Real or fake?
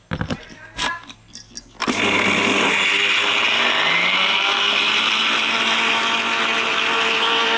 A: real